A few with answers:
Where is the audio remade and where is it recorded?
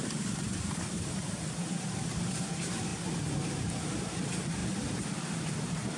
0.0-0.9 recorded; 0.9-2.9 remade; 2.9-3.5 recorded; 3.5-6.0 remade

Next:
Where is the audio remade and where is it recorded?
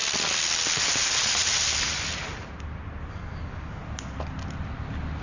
0.0-3.1 recorded; 3.1-3.8 remade; 3.8-5.2 recorded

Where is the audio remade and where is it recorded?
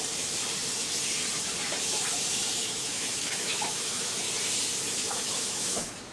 0.0-2.6 recorded; 2.6-4.2 remade; 4.2-5.0 recorded; 5.0-6.1 remade